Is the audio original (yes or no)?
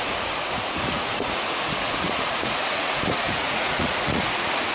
no